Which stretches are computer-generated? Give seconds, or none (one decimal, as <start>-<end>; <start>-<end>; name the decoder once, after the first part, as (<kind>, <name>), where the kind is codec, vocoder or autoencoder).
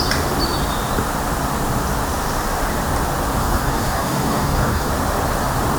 3.4-4.9 (codec, DAC)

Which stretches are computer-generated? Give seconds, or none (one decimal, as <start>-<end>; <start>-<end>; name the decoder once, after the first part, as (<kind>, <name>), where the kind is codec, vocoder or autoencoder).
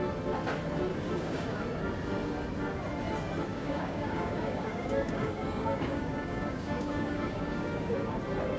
0.9-1.6 (codec, DAC); 3.5-8.2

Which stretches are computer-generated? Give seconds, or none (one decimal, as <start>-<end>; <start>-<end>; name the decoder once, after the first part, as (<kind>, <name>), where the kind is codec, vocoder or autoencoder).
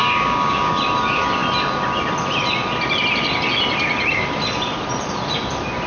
0.0-0.7 (codec, DAC)